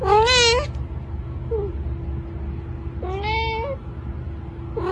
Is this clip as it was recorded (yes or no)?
yes